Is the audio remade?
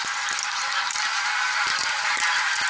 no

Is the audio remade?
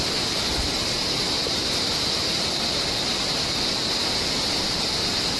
no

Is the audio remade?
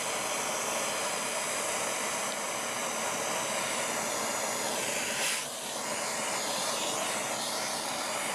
no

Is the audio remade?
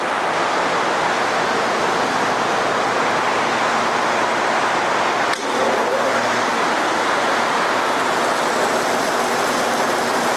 no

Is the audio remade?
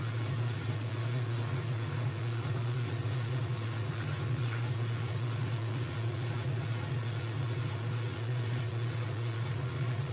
yes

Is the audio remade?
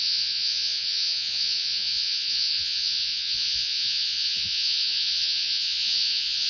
yes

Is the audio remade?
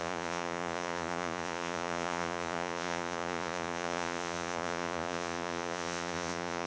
yes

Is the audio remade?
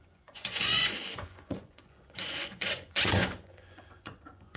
yes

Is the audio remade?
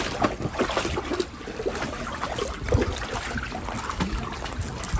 no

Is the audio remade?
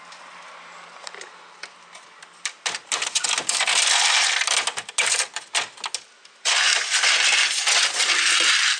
no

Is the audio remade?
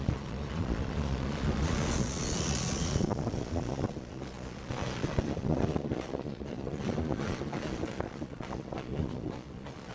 yes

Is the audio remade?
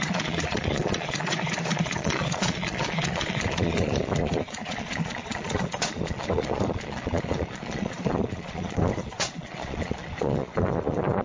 yes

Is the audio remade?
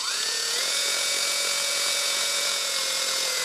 yes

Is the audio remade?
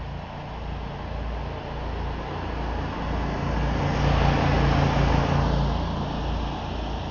no